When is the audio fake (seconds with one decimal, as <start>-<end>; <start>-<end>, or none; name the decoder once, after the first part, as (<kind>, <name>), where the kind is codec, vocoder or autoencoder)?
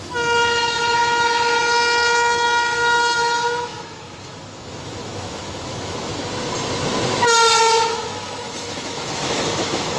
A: 0.0-6.1 (autoencoder, DAC-VAE); 7.6-10.0